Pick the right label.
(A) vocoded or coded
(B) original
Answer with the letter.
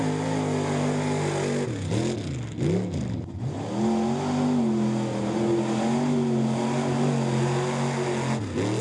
B